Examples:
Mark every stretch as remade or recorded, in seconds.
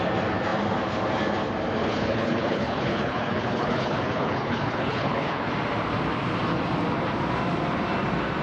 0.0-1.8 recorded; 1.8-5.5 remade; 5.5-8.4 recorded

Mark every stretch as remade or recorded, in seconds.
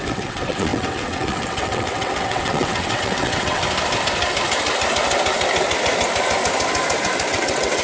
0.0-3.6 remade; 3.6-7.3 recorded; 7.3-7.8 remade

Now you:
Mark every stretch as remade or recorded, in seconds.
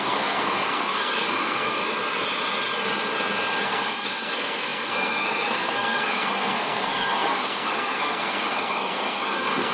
0.0-1.9 remade; 1.9-3.6 recorded; 3.6-9.7 remade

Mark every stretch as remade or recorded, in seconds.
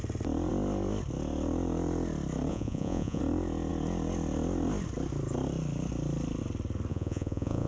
0.0-2.5 recorded; 2.5-3.2 remade; 3.2-6.9 recorded; 6.9-7.7 remade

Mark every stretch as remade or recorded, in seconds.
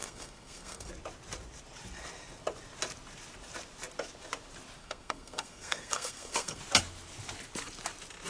0.0-0.9 remade; 0.9-4.8 recorded; 4.8-6.6 remade; 6.6-8.3 recorded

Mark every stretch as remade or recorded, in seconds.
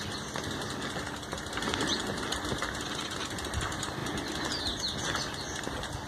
0.0-6.1 recorded